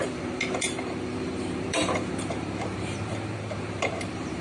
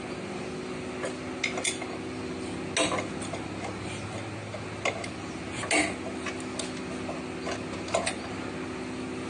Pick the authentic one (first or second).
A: second